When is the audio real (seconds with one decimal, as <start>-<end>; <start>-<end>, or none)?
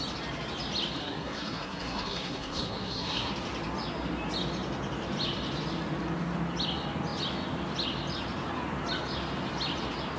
0.0-1.0; 3.3-10.2